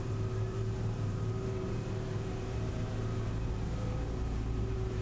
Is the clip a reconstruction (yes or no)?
yes